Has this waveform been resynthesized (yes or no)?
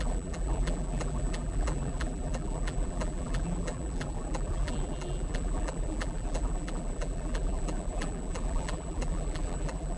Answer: yes